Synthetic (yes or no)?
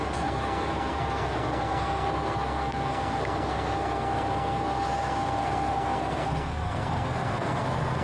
yes